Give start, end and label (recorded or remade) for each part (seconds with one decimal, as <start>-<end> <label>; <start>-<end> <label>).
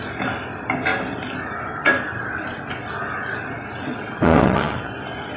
0.0-3.9 recorded; 3.9-4.9 remade; 4.9-5.4 recorded